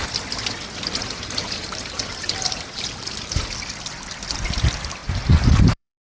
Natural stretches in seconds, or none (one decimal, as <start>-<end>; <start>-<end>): 0.0-1.0; 3.4-5.0